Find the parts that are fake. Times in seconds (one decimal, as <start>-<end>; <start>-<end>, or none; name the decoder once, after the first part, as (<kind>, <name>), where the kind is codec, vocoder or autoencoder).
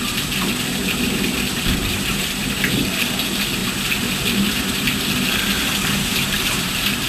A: 1.8-3.1 (vocoder, BigVGAN v2); 6.1-7.1